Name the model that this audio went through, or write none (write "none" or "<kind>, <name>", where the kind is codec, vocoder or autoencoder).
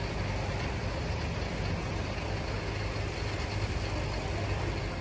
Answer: none